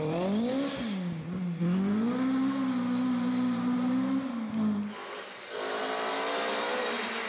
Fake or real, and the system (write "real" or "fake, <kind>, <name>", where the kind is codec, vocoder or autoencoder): real